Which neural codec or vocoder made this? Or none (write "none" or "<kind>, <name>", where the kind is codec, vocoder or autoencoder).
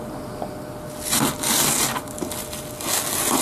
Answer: none